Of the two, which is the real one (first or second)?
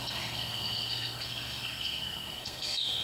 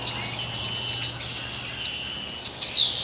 second